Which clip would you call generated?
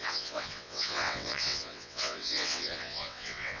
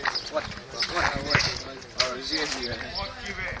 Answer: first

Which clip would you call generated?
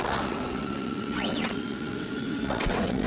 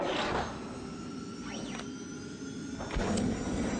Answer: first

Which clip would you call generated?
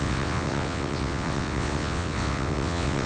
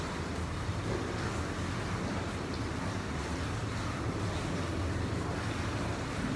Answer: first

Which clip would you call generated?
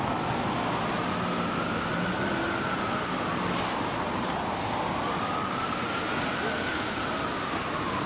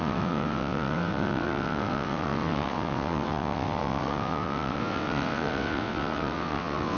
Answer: second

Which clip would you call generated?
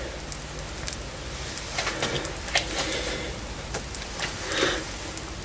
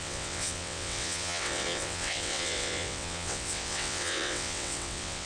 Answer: second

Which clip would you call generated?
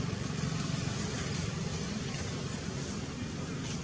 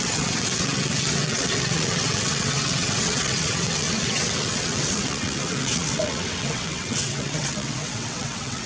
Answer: second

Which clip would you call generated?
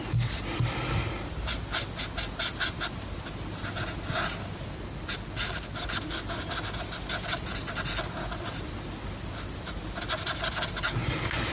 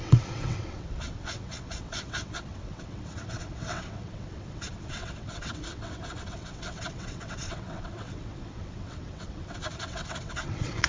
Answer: second